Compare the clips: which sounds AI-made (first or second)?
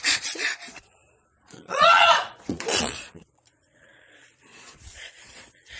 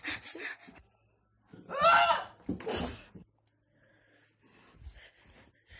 first